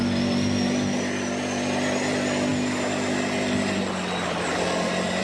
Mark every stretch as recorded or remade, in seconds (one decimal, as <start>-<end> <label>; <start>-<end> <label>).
0.0-5.2 recorded